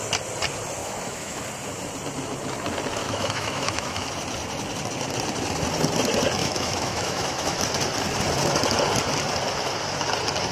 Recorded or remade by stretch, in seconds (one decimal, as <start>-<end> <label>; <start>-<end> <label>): 0.0-0.8 recorded; 0.8-1.4 remade; 1.4-3.0 recorded; 3.0-4.1 remade; 4.1-6.4 recorded; 6.4-7.6 remade; 7.6-10.5 recorded